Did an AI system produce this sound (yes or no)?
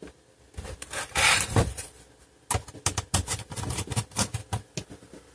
no